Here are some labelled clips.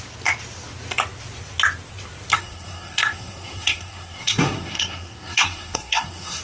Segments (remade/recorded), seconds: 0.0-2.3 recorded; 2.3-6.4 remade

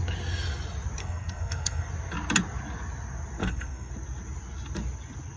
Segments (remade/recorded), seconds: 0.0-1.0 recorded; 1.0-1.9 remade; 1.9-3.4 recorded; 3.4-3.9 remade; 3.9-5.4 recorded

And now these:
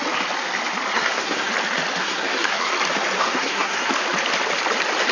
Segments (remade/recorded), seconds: 0.0-0.9 recorded; 0.9-1.5 remade; 1.5-2.0 recorded; 2.0-2.7 remade; 2.7-3.2 recorded; 3.2-3.9 remade; 3.9-5.1 recorded